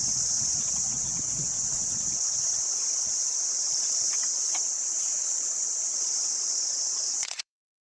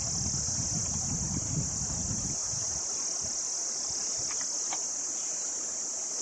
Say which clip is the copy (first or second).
first